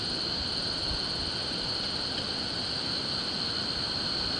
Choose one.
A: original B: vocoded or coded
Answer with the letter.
A